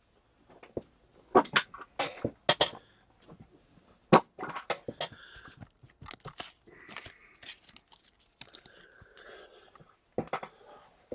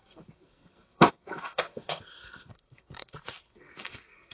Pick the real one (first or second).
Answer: first